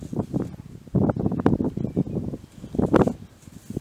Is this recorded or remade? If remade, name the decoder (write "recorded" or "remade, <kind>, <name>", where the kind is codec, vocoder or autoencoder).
recorded